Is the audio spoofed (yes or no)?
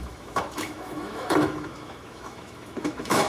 yes